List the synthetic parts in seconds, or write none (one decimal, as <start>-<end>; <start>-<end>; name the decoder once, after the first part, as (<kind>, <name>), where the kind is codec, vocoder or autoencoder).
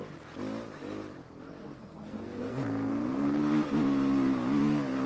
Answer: 1.6-3.4 (codec, SNAC)